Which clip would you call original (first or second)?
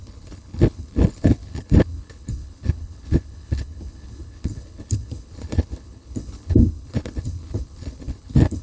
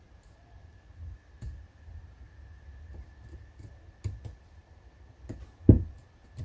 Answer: second